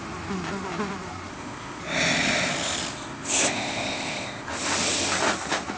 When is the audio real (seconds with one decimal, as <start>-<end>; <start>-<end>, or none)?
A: 0.0-1.3; 1.8-2.9; 4.5-5.8